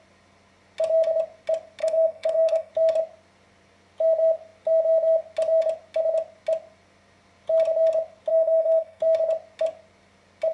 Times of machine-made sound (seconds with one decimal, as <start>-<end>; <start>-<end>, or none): 1.8-2.7; 8.3-9.0